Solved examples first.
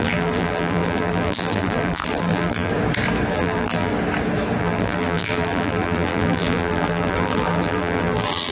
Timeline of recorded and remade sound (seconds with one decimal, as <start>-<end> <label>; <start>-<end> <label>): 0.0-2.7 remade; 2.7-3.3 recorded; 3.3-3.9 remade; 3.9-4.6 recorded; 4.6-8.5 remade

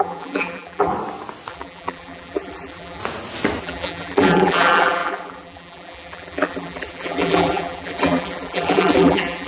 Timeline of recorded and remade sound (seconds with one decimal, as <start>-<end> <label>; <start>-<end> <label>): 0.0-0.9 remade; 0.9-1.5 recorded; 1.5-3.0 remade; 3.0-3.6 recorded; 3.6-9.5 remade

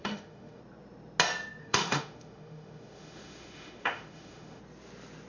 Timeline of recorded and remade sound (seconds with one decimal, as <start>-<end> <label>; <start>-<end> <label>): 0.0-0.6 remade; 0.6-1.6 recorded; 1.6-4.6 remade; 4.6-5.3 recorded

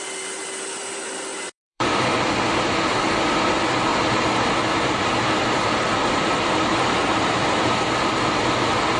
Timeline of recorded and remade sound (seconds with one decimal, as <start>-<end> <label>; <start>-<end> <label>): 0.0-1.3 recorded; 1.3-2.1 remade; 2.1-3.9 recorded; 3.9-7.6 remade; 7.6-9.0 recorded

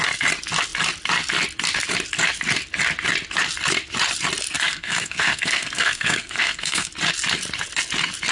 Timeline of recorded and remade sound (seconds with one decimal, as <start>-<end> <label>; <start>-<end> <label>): 0.0-4.7 recorded; 4.7-6.9 remade; 6.9-8.3 recorded

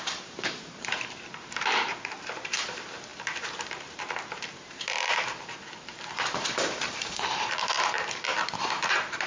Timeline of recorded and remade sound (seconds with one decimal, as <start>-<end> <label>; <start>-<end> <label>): 0.0-9.3 remade

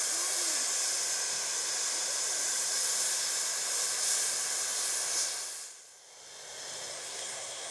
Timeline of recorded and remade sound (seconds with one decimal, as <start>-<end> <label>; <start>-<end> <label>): 0.0-6.9 recorded; 6.9-7.7 remade